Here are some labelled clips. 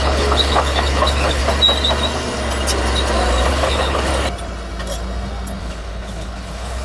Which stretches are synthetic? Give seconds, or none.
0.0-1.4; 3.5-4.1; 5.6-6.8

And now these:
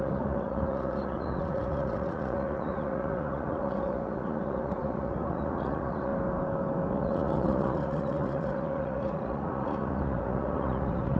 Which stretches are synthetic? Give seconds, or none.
0.0-6.1; 6.9-11.2

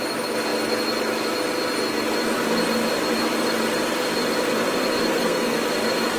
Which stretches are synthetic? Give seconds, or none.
5.1-5.6

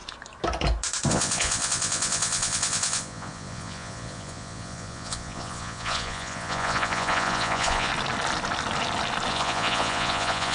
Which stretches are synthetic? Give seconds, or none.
1.1-7.9; 9.3-10.5